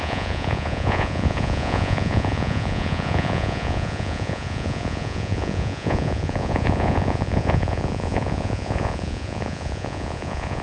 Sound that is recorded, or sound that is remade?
remade